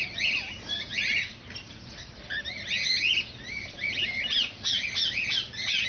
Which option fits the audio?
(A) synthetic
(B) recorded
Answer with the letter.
B